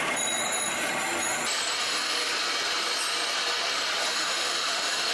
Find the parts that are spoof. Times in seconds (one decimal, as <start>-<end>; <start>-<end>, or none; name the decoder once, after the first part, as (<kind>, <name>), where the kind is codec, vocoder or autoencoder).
1.8-2.3 (autoencoder, DAC-VAE); 4.0-5.1

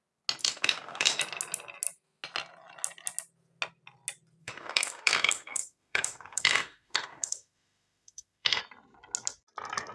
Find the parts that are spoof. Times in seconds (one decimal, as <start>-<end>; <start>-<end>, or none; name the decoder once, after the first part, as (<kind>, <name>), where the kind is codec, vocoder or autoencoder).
0.4-1.2 (autoencoder, DAC-VAE); 4.4-8.6